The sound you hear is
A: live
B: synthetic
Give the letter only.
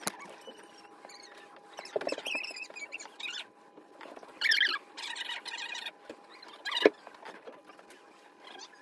A